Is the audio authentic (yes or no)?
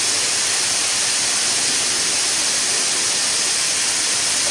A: yes